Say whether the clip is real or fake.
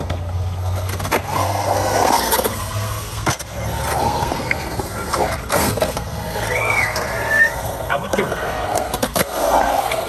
fake